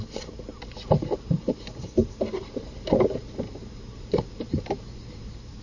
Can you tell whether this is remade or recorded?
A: remade